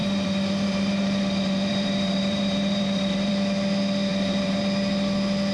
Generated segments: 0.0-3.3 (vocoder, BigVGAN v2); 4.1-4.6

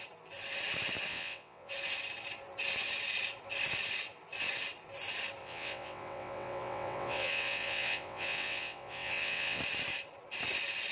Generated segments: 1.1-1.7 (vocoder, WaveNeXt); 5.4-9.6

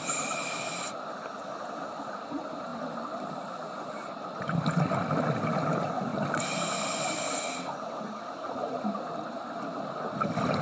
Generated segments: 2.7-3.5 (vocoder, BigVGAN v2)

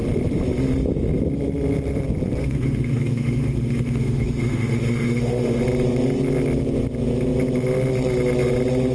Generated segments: 2.4-5.6 (autoencoder, DAC-VAE)

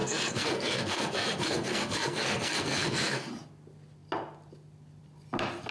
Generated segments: 0.0-3.3 (codec, SNAC)